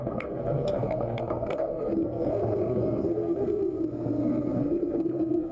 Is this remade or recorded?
remade